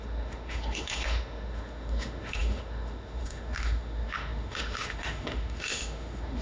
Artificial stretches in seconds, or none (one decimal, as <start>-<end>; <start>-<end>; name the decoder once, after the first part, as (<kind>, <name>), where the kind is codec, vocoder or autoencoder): 0.0-6.4 (autoencoder, DAC-VAE)